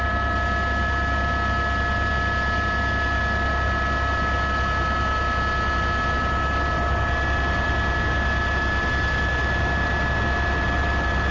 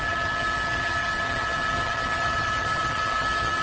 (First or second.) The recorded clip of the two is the first